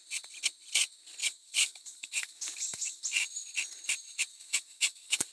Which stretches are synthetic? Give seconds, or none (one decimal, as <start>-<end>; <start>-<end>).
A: 1.2-3.0; 4.3-5.3